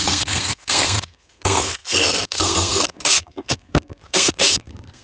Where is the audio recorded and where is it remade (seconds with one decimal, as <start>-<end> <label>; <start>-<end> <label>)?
0.0-5.0 remade